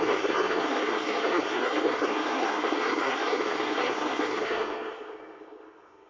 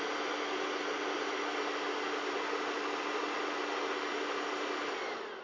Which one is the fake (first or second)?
first